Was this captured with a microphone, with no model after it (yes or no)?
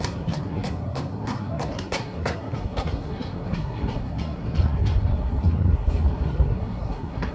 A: no